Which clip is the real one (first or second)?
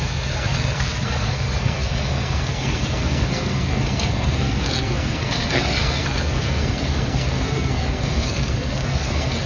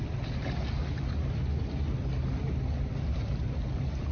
second